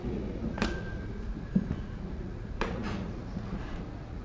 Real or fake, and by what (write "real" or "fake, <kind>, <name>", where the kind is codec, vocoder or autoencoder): fake, vocoder, Vocos